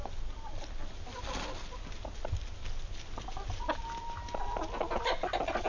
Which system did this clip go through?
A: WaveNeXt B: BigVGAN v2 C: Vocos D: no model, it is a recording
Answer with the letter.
D